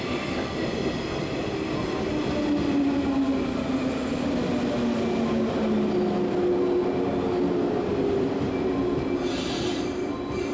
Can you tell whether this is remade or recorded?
recorded